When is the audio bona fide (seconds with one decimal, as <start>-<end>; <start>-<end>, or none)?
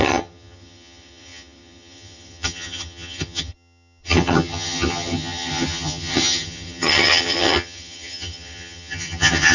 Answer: none